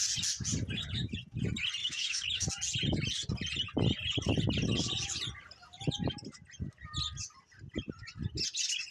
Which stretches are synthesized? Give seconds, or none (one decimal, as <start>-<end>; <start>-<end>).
1.8-2.5